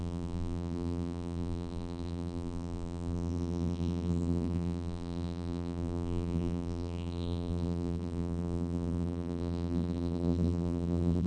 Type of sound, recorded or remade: remade